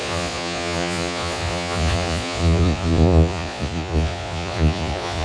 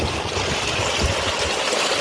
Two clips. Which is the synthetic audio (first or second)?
first